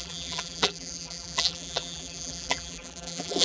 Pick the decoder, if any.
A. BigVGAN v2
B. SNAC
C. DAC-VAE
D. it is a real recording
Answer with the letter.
A